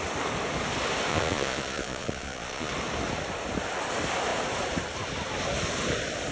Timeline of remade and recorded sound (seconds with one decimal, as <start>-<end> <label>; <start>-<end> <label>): 0.0-1.1 recorded; 1.1-2.7 remade; 2.7-6.3 recorded